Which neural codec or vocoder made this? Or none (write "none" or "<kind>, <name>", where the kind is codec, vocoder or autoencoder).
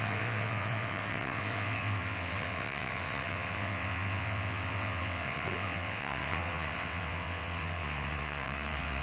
vocoder, WaveNeXt